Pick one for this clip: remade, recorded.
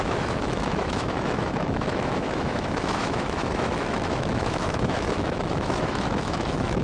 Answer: remade